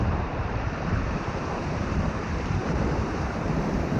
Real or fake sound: fake